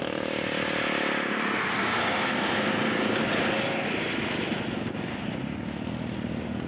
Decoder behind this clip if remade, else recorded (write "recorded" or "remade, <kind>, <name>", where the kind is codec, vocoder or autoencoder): recorded